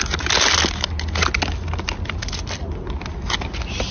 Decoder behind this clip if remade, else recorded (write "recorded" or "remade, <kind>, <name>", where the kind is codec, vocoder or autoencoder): recorded